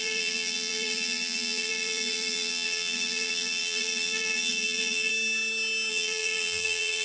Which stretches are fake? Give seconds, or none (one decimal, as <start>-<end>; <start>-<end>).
0.0-5.1; 5.9-7.0